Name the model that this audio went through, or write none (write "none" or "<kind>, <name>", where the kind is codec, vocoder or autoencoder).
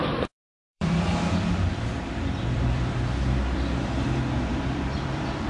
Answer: vocoder, BigVGAN v2